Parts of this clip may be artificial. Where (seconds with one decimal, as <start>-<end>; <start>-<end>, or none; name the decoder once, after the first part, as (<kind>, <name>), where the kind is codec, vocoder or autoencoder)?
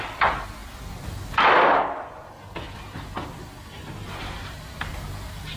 0.0-0.6 (vocoder, BigVGAN v2); 4.0-5.6